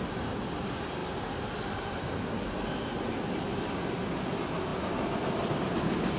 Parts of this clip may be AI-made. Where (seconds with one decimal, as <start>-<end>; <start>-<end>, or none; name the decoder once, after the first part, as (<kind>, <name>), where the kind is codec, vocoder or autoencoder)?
none